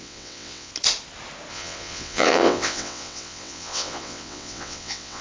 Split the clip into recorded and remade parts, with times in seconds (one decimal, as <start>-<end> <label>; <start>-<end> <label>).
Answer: 0.0-0.7 remade; 0.7-1.5 recorded; 1.5-5.2 remade